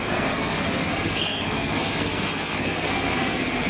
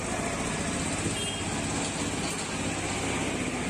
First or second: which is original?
second